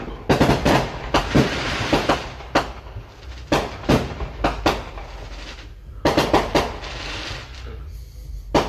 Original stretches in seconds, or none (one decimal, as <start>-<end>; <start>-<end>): 0.0-8.7